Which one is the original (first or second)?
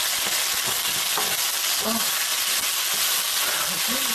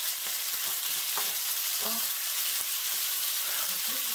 first